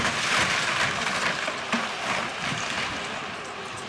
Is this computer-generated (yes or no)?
no